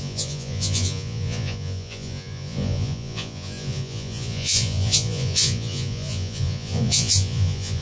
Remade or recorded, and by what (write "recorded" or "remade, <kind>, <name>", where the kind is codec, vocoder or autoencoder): remade, vocoder, Vocos